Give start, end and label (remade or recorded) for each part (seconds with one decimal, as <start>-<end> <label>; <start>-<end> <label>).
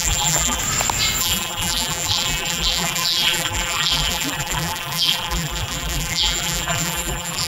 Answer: 0.0-0.6 remade; 0.6-1.2 recorded; 1.2-7.5 remade